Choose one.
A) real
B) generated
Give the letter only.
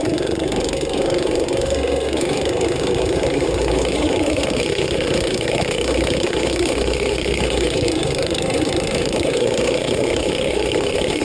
B